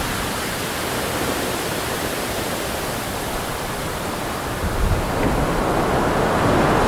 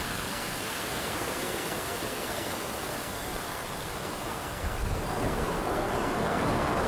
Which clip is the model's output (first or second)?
second